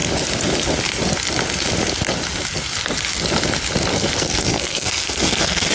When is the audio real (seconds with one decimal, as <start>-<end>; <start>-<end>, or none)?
0.0-4.0